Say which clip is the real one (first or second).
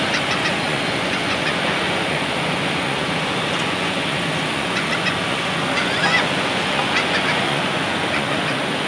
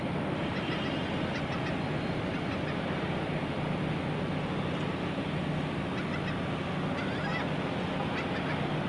second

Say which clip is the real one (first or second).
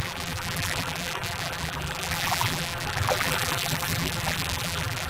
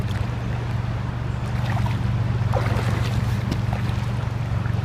second